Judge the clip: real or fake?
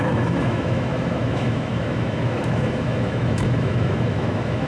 fake